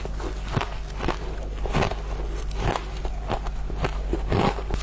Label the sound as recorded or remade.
recorded